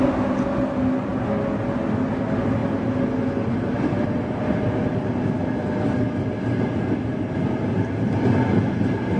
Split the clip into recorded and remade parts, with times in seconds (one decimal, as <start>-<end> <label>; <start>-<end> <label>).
0.0-9.2 recorded